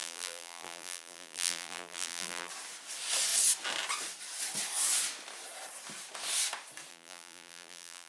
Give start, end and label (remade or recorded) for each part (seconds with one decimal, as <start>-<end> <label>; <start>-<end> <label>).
0.0-2.5 remade; 2.5-6.9 recorded; 6.9-8.1 remade